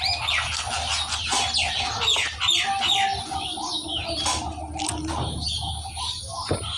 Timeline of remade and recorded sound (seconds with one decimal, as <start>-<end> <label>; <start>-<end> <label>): 0.0-6.8 recorded